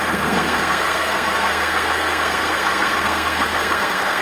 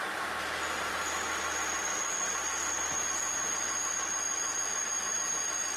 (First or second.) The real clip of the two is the second